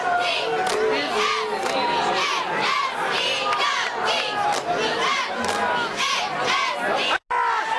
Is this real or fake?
real